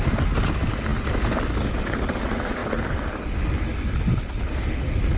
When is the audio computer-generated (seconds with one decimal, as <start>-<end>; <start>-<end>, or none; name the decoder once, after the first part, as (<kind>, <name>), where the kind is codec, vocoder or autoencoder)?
none